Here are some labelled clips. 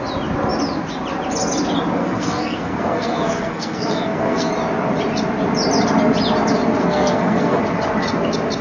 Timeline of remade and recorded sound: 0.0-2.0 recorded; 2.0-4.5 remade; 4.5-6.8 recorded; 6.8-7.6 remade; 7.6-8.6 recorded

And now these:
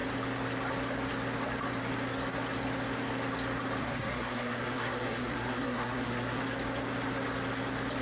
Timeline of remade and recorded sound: 0.0-3.8 recorded; 3.8-6.4 remade; 6.4-8.0 recorded

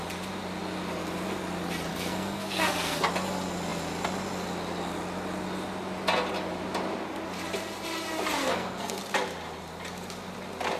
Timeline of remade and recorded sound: 0.0-1.9 recorded; 1.9-3.1 remade; 3.1-8.4 recorded; 8.4-9.0 remade; 9.0-10.8 recorded

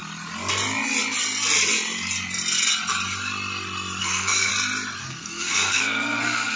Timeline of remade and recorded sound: 0.0-4.0 recorded; 4.0-4.5 remade; 4.5-5.0 recorded; 5.0-6.6 remade

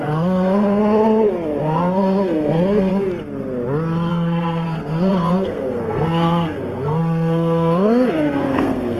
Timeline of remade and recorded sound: 0.0-0.8 remade; 0.8-1.6 recorded; 1.6-2.9 remade; 2.9-4.1 recorded; 4.1-9.0 remade

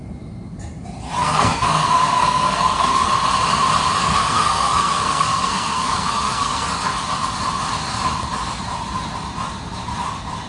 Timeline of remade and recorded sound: 0.0-1.2 recorded; 1.2-3.1 remade; 3.1-4.0 recorded; 4.0-6.7 remade; 6.7-10.5 recorded

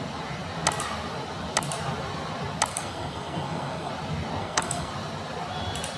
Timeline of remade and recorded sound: 0.0-2.7 recorded; 2.7-3.9 remade; 3.9-4.4 recorded; 4.4-4.9 remade; 4.9-6.0 recorded

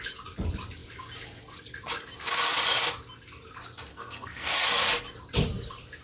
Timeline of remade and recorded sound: 0.0-3.9 recorded; 3.9-4.5 remade; 4.5-6.0 recorded